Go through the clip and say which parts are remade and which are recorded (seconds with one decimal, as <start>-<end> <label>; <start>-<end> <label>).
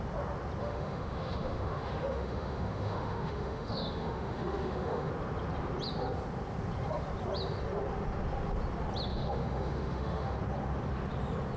0.0-0.6 recorded; 0.6-5.1 remade; 5.1-9.1 recorded; 9.1-10.4 remade; 10.4-11.6 recorded